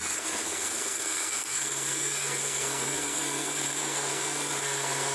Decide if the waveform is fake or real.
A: fake